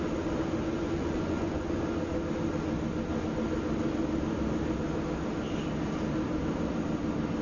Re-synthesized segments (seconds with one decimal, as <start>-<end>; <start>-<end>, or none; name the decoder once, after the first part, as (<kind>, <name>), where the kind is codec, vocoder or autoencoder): 0.6-1.8 (vocoder, Vocos)